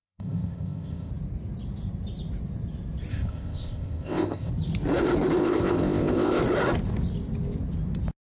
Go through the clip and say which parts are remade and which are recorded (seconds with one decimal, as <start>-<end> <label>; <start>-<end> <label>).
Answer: 0.0-1.1 remade; 1.1-3.1 recorded; 3.1-4.5 remade; 4.5-5.4 recorded; 5.4-6.4 remade; 6.4-8.3 recorded